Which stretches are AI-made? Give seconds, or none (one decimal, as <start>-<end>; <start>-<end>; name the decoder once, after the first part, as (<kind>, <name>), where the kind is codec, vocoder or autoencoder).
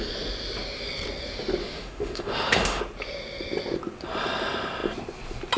1.6-2.8 (autoencoder, DAC-VAE)